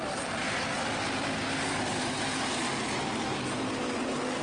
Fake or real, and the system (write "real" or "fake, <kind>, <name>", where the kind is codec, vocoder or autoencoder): real